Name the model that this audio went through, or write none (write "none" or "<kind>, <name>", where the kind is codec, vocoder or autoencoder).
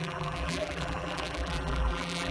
vocoder, BigVGAN v2